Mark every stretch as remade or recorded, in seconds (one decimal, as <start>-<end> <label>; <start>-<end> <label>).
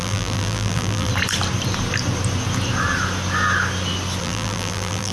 0.0-1.1 remade; 1.1-4.2 recorded; 4.2-5.1 remade